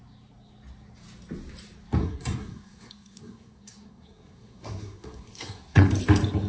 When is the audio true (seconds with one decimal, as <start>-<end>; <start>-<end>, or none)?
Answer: 0.0-2.0; 5.9-6.5